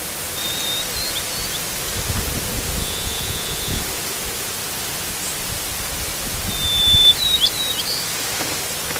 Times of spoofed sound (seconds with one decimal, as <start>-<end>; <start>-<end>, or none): 2.8-3.8